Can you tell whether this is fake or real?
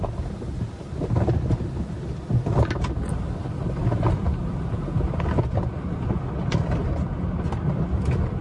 real